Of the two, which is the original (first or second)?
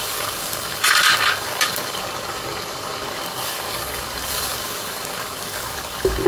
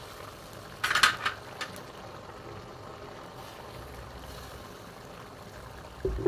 second